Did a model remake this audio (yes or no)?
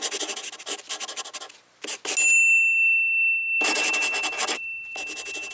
no